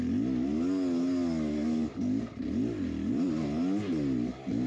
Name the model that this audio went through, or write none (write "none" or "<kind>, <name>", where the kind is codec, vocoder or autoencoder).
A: none